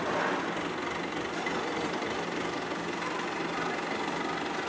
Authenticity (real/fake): real